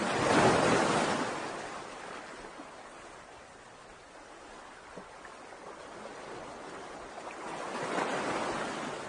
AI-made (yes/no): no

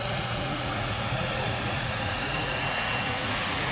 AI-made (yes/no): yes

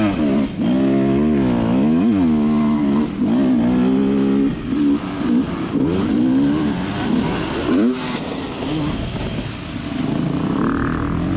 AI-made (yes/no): no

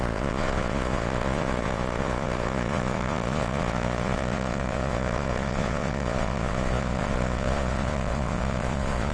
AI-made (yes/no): yes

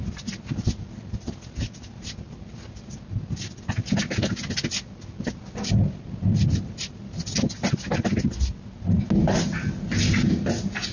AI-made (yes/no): no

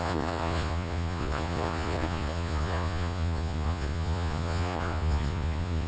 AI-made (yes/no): yes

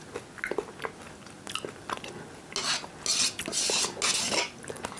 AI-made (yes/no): no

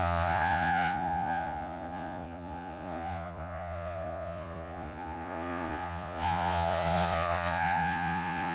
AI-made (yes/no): yes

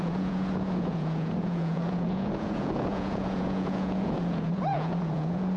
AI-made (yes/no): yes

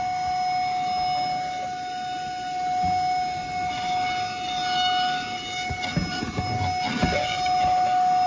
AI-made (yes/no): no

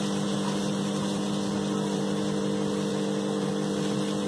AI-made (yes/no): no